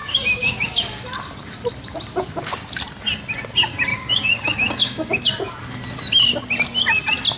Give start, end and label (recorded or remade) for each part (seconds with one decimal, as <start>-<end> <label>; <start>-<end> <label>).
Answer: 0.0-0.7 remade; 0.7-3.9 recorded; 3.9-5.1 remade; 5.1-7.4 recorded